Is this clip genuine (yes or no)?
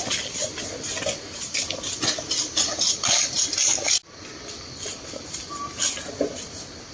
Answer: yes